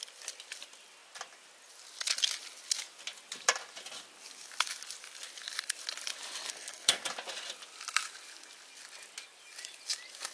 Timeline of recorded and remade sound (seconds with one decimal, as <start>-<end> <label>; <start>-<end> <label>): 0.0-6.5 recorded; 6.5-7.0 remade; 7.0-10.3 recorded